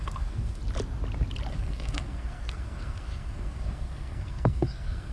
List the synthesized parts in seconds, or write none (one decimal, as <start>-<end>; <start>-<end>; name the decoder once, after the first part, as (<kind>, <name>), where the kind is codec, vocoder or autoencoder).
0.0-0.6 (codec, SNAC); 1.5-5.1